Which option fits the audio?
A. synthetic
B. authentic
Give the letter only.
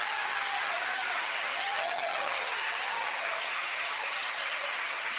A